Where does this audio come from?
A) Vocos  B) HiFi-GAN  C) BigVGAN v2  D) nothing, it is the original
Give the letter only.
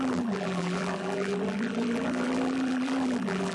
C